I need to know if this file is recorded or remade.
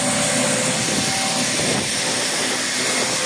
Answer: recorded